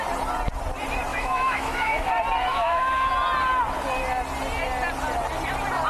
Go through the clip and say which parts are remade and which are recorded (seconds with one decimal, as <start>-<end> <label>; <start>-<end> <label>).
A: 0.0-1.1 recorded; 1.1-2.1 remade; 2.1-2.5 recorded; 2.5-3.1 remade; 3.1-5.9 recorded